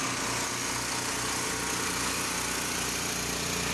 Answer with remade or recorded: recorded